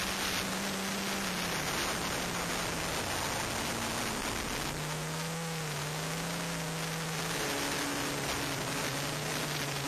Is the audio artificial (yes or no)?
no